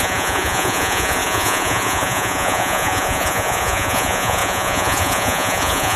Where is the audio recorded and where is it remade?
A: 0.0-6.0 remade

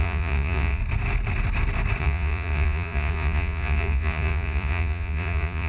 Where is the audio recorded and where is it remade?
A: 0.0-0.8 remade; 0.8-2.0 recorded; 2.0-5.7 remade

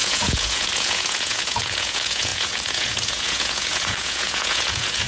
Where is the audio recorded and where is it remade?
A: 0.0-5.1 remade